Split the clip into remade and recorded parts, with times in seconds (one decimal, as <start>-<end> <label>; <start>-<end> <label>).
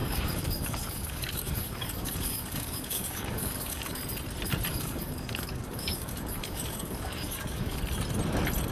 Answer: 0.0-4.0 remade; 4.0-4.7 recorded; 4.7-7.8 remade; 7.8-8.7 recorded